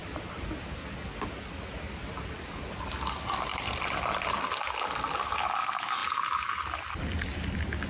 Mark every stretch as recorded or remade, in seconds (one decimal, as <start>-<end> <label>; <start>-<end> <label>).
0.0-7.9 recorded

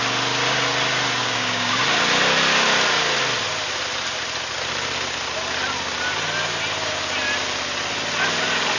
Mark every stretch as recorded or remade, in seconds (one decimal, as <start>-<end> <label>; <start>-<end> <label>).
0.0-1.2 recorded; 1.2-1.8 remade; 1.8-8.8 recorded

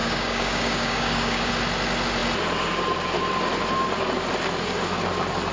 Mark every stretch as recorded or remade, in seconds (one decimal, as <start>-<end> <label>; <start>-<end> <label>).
0.0-1.5 remade; 1.5-5.5 recorded

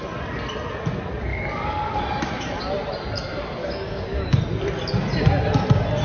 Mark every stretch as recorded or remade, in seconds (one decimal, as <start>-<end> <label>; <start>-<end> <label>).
0.0-1.3 recorded; 1.3-2.0 remade; 2.0-3.6 recorded; 3.6-4.4 remade; 4.4-6.0 recorded